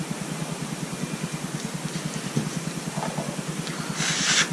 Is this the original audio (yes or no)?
yes